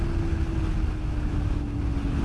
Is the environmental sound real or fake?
real